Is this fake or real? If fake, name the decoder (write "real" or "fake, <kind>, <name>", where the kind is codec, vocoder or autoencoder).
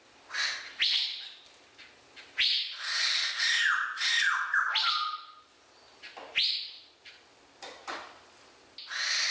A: real